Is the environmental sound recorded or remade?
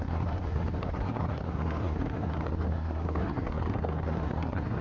remade